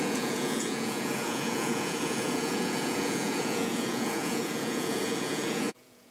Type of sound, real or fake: fake